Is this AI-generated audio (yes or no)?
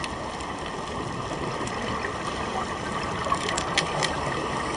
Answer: no